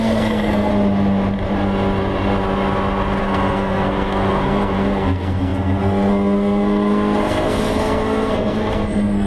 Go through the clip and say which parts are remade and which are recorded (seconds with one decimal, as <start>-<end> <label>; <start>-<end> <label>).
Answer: 0.0-0.7 remade; 0.7-3.2 recorded; 3.2-9.3 remade